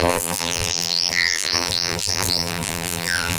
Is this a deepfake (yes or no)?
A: yes